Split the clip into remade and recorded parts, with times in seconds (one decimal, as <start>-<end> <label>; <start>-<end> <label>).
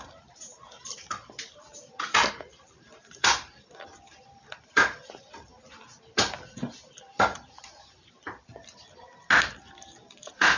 0.0-5.5 remade; 5.5-10.2 recorded; 10.2-10.6 remade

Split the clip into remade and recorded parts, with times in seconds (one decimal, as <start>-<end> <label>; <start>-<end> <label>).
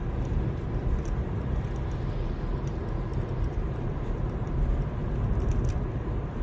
0.0-3.1 recorded; 3.1-4.5 remade; 4.5-6.4 recorded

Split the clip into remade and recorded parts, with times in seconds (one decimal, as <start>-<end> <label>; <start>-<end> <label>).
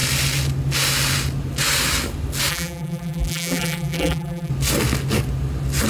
0.0-2.5 recorded; 2.5-4.5 remade; 4.5-5.9 recorded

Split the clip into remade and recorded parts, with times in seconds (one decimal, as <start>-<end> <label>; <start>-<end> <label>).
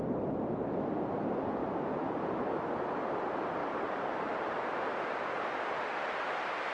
0.0-1.6 recorded; 1.6-2.6 remade; 2.6-3.6 recorded; 3.6-5.3 remade; 5.3-6.7 recorded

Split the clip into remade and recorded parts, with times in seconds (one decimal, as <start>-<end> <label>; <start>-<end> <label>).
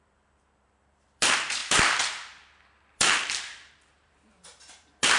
0.0-5.2 remade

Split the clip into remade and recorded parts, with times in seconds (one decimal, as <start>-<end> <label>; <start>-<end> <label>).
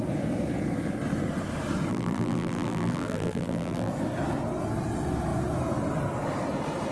0.0-1.9 recorded; 1.9-3.9 remade; 3.9-6.9 recorded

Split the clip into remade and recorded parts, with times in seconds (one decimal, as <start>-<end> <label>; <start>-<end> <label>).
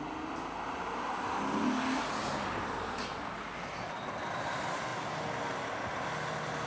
0.0-6.7 recorded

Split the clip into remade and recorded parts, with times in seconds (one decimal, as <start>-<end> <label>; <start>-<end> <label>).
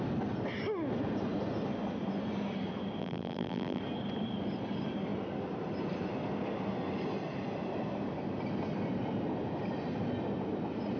0.0-3.0 recorded; 3.0-3.8 remade; 3.8-11.0 recorded